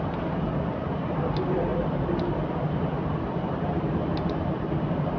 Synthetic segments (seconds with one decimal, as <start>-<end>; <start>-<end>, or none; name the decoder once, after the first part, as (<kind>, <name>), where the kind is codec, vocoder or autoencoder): none